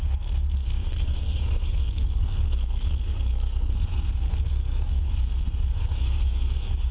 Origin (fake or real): fake